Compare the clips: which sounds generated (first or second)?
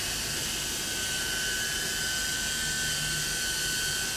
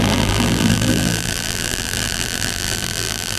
second